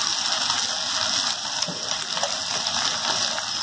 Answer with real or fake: real